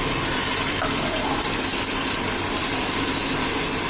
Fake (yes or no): no